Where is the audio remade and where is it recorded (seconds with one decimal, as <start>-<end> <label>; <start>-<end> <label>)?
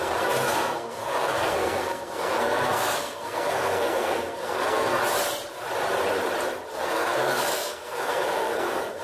0.0-5.0 remade; 5.0-6.7 recorded; 6.7-9.0 remade